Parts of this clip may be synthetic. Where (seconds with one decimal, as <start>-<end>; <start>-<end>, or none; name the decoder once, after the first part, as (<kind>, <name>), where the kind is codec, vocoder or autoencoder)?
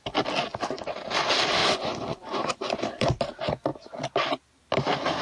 1.6-2.7 (vocoder, Vocos)